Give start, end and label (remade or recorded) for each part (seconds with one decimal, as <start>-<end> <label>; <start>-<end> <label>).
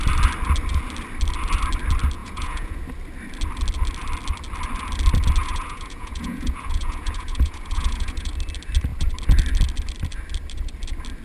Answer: 0.0-2.2 recorded; 2.2-2.8 remade; 2.8-5.4 recorded; 5.4-8.3 remade; 8.3-11.2 recorded